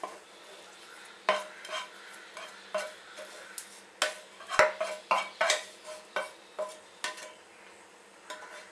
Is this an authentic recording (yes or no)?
yes